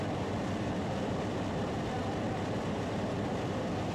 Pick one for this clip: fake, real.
fake